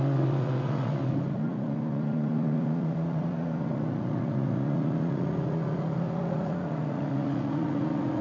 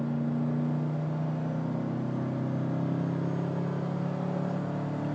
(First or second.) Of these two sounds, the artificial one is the first